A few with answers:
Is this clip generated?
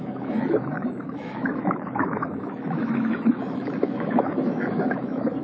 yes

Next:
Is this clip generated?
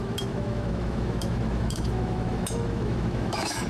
yes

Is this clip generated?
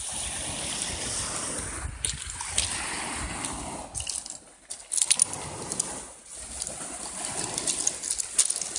no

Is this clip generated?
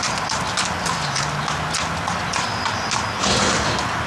no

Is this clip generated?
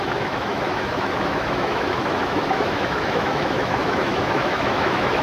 yes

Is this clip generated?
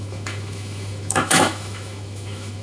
yes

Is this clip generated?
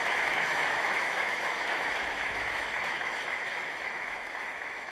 yes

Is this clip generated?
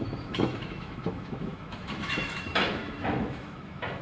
yes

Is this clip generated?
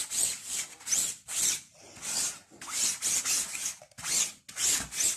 no